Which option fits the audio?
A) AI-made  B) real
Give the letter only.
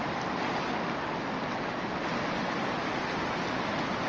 B